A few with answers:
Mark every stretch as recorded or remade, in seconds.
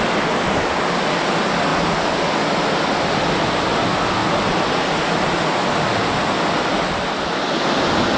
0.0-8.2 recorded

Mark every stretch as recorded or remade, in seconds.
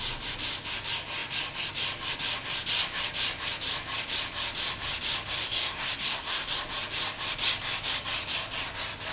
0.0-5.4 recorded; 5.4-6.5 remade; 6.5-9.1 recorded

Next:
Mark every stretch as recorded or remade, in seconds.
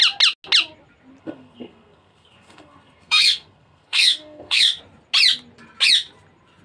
0.0-1.2 recorded; 1.2-4.8 remade; 4.8-6.6 recorded